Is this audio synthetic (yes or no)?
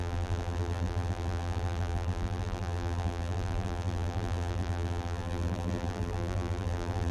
yes